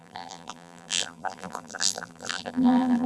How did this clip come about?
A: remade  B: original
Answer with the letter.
A